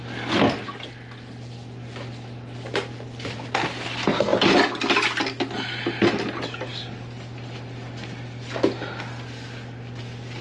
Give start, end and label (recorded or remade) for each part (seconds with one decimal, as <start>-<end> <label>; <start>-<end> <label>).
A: 0.0-10.4 recorded